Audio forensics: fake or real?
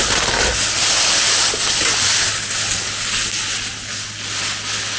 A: real